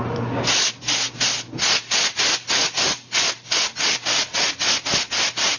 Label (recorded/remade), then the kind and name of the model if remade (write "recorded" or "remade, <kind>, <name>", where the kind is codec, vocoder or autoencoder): recorded